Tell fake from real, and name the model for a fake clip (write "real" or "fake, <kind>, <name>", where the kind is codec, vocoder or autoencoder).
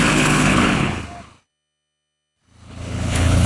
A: fake, codec, HILCodec